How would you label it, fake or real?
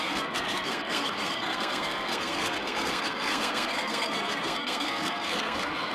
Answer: fake